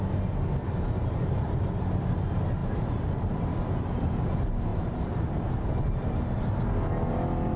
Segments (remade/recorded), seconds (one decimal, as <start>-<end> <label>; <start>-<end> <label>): 0.0-0.6 recorded; 0.6-1.7 remade; 1.7-2.6 recorded; 2.6-3.4 remade; 3.4-4.7 recorded; 4.7-5.5 remade; 5.5-7.6 recorded